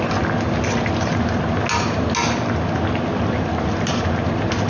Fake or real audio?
real